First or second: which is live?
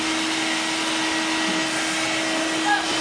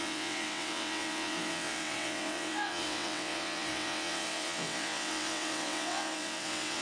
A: first